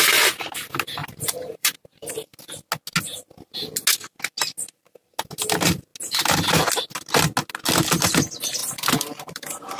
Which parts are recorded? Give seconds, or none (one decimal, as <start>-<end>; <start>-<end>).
0.0-1.0; 2.1-8.6